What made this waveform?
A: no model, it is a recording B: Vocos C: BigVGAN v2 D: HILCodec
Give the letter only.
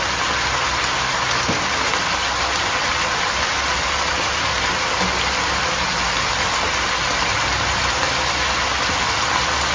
A